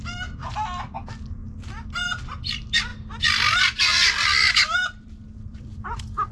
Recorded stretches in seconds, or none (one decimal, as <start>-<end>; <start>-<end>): 1.4-2.2; 2.9-3.6